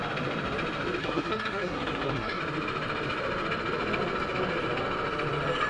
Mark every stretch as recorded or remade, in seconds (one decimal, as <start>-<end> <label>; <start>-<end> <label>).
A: 0.0-1.0 recorded; 1.0-2.4 remade; 2.4-5.7 recorded